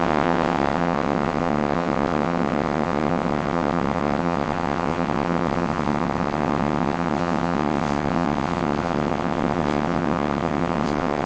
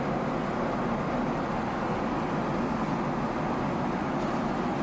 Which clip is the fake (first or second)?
first